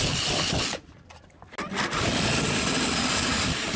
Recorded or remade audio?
recorded